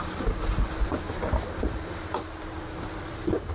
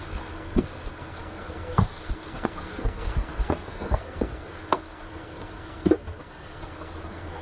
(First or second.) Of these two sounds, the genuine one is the first